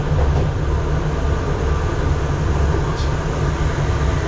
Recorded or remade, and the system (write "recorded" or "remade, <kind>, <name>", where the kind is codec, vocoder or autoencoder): recorded